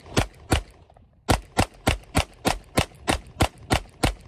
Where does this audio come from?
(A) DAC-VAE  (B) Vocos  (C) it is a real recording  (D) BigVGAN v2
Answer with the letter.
C